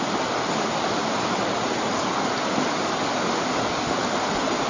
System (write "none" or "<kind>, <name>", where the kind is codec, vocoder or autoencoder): none